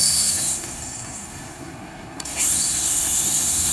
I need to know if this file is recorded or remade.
remade